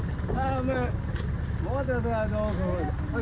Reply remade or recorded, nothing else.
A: recorded